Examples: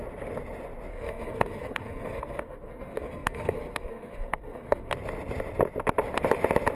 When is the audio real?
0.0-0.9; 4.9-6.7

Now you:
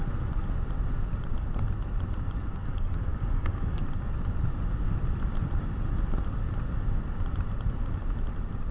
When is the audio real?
0.0-2.5; 3.8-8.7

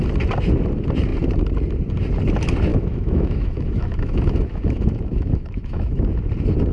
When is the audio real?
0.0-2.7; 6.0-6.7

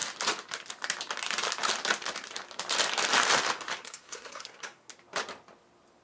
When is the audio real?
0.0-3.8; 4.9-6.0